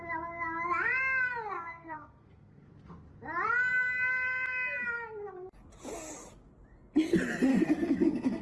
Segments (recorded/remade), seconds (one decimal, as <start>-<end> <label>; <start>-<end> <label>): 0.0-1.5 recorded; 1.5-2.7 remade; 2.7-7.5 recorded; 7.5-8.4 remade